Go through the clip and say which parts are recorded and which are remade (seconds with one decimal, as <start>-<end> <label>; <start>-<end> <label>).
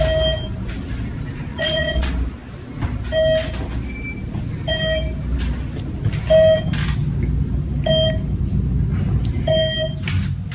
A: 0.0-1.5 recorded; 1.5-2.1 remade; 2.1-10.5 recorded